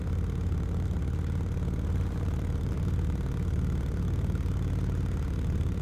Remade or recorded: remade